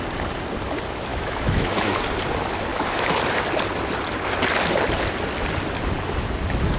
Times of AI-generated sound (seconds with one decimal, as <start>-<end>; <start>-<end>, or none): 1.1-2.0; 2.7-3.2